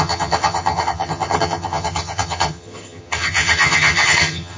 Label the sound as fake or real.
fake